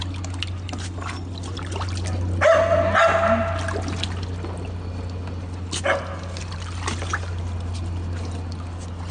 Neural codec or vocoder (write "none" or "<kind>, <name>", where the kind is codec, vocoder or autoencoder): none